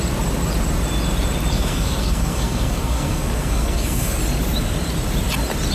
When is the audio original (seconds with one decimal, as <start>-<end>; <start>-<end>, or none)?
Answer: 0.0-1.5; 4.2-5.7

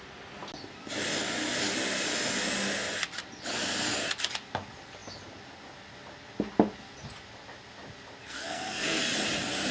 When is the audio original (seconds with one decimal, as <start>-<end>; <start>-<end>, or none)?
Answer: 0.0-8.2; 9.0-9.7

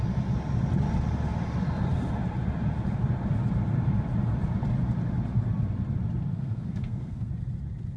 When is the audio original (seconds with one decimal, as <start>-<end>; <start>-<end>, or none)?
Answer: 0.0-6.3; 7.3-8.0

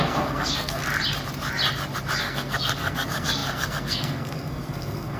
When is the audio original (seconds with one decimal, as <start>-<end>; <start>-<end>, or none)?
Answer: 0.8-2.2